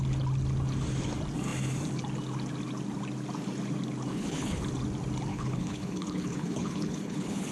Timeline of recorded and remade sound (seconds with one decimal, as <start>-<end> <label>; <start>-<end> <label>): 0.0-4.1 recorded; 4.1-4.6 remade; 4.6-5.3 recorded; 5.3-7.5 remade